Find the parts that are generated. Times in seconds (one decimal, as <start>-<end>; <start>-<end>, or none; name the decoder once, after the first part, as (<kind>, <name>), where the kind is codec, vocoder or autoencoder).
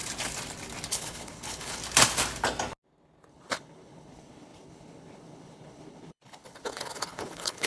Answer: 0.9-1.8 (codec, HILCodec); 3.3-7.7